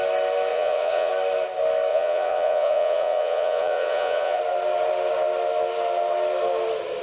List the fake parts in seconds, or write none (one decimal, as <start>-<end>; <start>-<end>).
0.5-1.1; 1.9-4.4